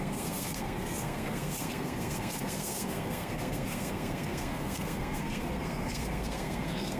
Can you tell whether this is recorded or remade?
remade